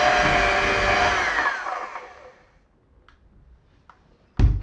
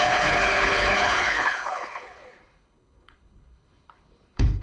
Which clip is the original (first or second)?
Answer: first